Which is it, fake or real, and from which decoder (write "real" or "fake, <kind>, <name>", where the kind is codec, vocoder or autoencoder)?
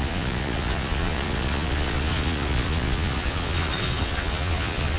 fake, vocoder, Vocos